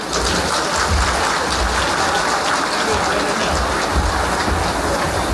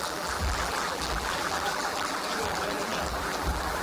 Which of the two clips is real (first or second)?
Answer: first